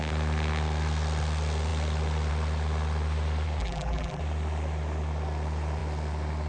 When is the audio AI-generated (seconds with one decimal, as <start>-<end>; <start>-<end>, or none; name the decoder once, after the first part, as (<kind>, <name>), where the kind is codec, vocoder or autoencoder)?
3.6-4.2 (vocoder, BigVGAN v2)